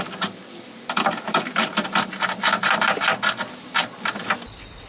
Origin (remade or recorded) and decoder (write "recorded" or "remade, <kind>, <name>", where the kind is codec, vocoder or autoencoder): recorded